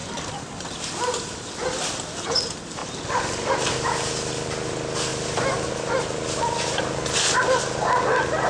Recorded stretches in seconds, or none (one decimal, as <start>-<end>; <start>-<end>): 0.6-8.5